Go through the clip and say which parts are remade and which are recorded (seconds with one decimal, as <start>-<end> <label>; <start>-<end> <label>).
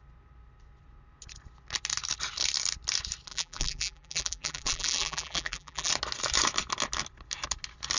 0.0-3.3 recorded; 3.3-5.9 remade; 5.9-8.0 recorded